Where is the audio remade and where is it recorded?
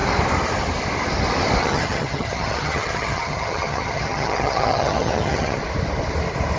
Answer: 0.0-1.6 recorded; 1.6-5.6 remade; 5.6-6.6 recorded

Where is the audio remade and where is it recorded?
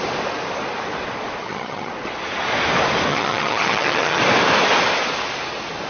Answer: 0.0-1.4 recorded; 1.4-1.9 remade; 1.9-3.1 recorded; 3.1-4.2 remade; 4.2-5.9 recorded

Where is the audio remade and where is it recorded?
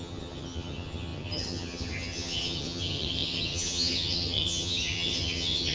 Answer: 0.0-5.7 remade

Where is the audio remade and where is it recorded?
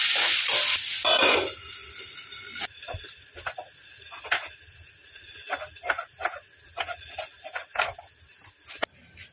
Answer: 0.0-9.3 recorded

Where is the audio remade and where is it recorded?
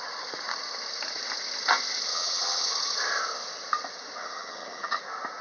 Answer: 0.0-2.1 recorded; 2.1-2.7 remade; 2.7-4.2 recorded; 4.2-5.0 remade; 5.0-5.4 recorded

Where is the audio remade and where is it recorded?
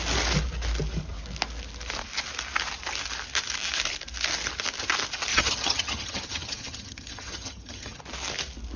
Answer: 0.0-5.3 recorded; 5.3-8.0 remade; 8.0-8.8 recorded